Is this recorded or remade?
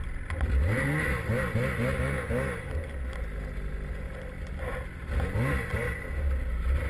recorded